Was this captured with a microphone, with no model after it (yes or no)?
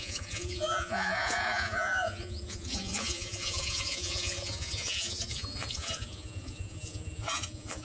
no